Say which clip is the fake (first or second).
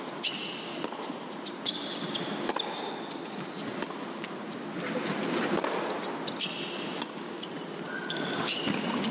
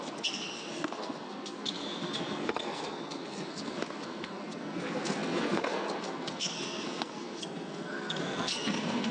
second